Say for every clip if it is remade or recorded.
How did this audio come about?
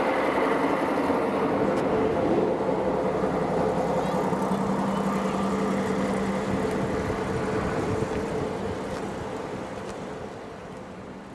recorded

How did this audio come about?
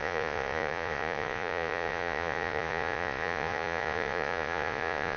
remade